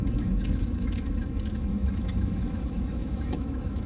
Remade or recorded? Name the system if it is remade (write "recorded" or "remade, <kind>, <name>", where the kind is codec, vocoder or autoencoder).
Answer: remade, autoencoder, DAC-VAE